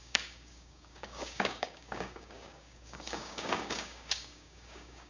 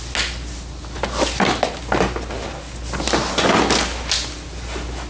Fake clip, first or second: first